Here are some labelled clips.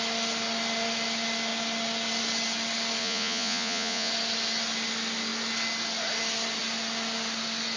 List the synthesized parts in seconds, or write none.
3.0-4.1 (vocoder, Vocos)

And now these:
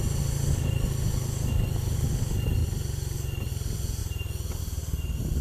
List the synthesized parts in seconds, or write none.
none

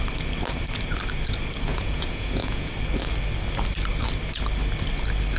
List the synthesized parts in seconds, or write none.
1.7-2.7 (vocoder, Vocos)

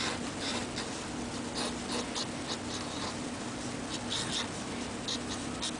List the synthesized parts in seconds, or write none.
none

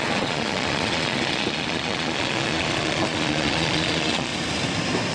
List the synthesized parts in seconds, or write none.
0.0-4.3 (vocoder, Vocos)